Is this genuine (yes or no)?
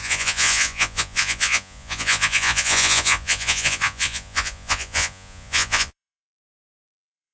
no